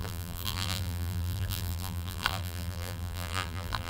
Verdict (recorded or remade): remade